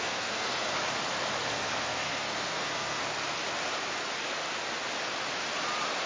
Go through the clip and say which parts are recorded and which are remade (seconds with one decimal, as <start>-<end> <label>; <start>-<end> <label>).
0.0-0.7 remade; 0.7-1.8 recorded; 1.8-3.0 remade; 3.0-6.1 recorded